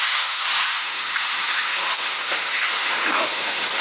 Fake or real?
fake